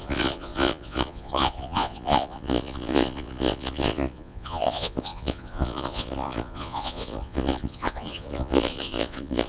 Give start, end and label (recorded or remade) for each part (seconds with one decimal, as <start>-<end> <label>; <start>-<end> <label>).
0.0-9.5 remade